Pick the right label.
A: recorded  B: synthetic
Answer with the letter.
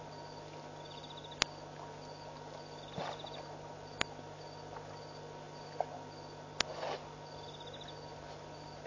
A